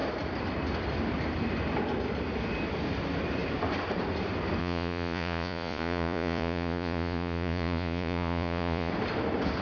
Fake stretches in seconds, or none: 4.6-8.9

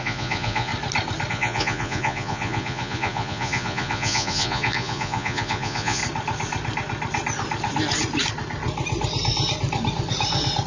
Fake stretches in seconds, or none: 0.0-0.7; 1.3-6.0

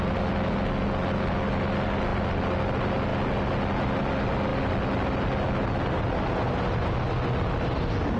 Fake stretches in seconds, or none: none

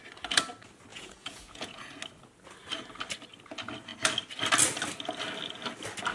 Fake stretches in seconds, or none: 0.9-1.9